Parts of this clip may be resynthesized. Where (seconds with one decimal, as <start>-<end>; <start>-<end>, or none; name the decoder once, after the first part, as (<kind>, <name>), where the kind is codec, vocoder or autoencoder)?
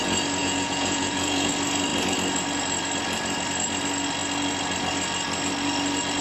0.4-1.5 (vocoder, Vocos)